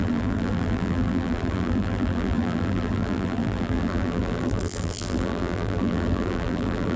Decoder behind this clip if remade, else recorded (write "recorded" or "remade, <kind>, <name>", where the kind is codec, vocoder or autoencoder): remade, vocoder, BigVGAN v2